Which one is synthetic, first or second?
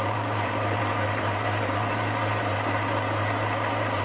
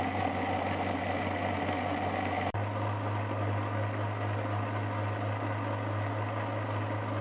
first